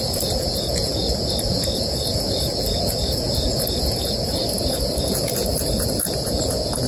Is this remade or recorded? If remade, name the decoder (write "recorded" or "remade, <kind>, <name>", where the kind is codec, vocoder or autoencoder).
remade, vocoder, Vocos